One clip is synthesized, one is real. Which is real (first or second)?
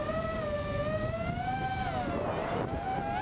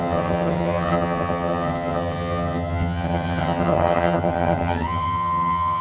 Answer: first